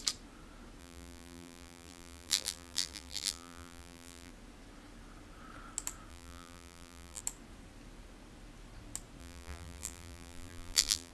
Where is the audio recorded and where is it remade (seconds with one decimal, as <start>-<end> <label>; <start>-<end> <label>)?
0.0-0.8 recorded; 0.8-4.3 remade; 4.3-6.1 recorded; 6.1-7.2 remade; 7.2-9.2 recorded; 9.2-11.1 remade